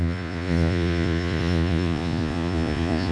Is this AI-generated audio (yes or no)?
yes